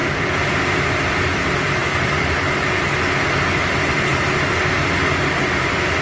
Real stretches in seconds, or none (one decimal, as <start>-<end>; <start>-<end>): 0.0-1.8; 2.5-6.0